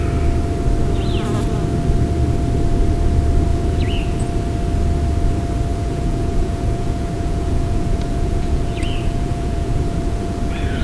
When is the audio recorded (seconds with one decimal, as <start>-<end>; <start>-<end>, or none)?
0.0-3.5; 4.3-5.7